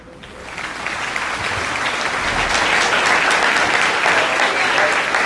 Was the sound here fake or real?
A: real